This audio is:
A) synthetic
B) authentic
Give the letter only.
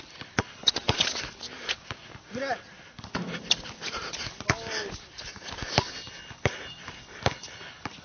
B